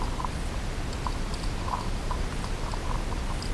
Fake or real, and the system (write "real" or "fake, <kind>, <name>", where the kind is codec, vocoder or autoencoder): real